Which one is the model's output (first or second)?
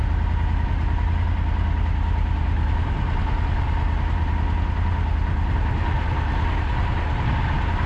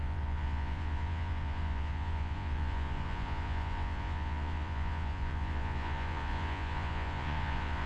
second